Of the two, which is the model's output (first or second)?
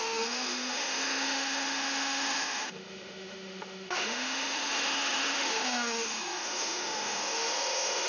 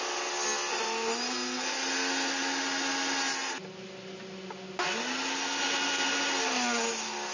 first